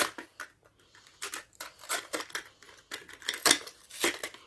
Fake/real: real